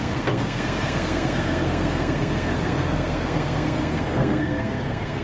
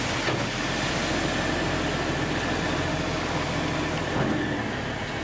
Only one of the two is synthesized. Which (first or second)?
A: first